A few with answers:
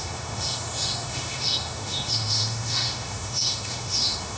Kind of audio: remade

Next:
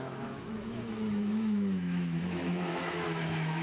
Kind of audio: remade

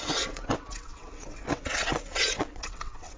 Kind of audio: remade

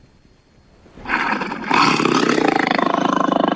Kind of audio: recorded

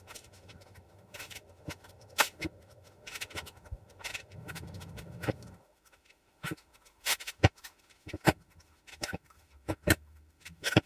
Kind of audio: remade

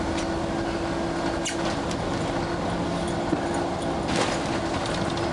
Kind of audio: recorded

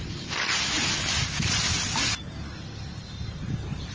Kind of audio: recorded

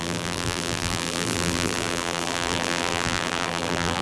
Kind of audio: remade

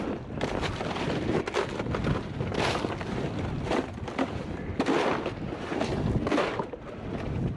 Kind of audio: recorded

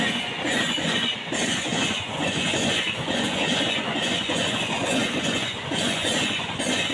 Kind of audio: remade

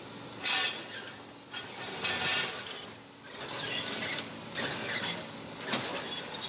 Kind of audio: recorded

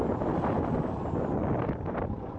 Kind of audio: recorded